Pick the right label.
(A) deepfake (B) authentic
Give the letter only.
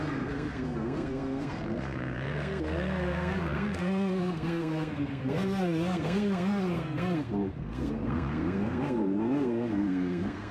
A